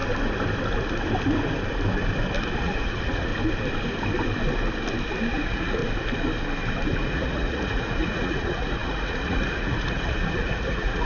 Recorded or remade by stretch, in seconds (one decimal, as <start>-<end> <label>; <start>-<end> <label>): 0.0-2.6 recorded; 2.6-3.3 remade; 3.3-5.3 recorded; 5.3-5.8 remade; 5.8-7.1 recorded; 7.1-11.1 remade